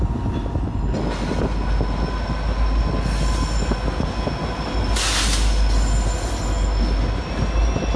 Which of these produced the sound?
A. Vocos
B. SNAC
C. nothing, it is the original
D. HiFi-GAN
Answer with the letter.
C